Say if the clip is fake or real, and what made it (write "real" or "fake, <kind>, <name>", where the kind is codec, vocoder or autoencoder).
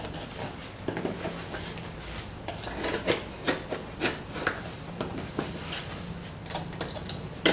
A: real